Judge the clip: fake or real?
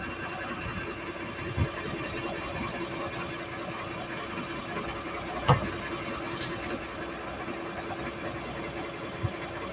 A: fake